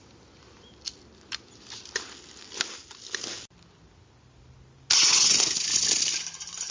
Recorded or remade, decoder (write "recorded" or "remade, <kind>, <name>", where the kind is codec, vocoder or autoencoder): recorded